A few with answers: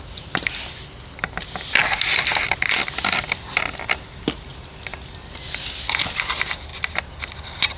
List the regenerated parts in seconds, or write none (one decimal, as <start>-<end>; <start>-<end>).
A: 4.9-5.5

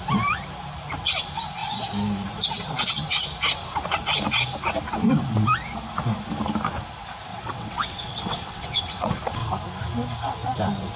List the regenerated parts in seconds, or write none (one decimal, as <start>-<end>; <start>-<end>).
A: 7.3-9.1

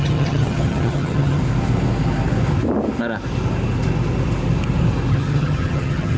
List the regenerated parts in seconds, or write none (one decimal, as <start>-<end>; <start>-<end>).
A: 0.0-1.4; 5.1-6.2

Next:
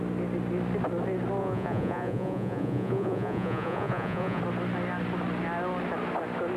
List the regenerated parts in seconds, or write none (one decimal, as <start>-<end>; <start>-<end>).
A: 1.4-4.4

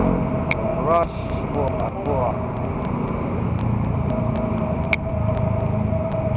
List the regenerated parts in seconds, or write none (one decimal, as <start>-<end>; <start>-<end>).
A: none

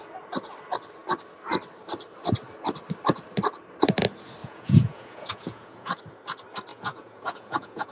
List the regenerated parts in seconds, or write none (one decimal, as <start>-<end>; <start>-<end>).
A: 4.4-6.0; 6.7-7.9

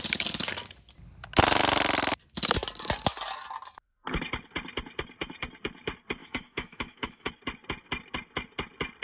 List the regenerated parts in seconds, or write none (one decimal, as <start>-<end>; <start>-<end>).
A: 6.2-7.3